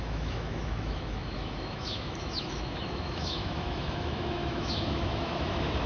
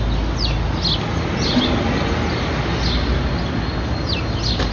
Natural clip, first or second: second